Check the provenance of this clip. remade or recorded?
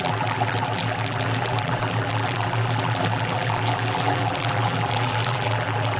remade